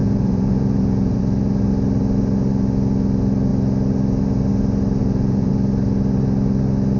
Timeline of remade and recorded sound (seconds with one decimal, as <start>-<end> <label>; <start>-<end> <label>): 0.0-1.2 remade; 1.2-5.0 recorded; 5.0-5.5 remade; 5.5-7.0 recorded